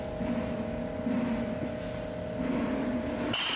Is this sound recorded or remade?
recorded